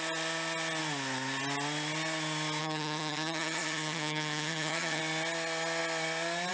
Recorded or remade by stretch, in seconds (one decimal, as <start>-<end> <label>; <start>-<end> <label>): 0.0-2.6 recorded; 2.6-5.0 remade; 5.0-6.5 recorded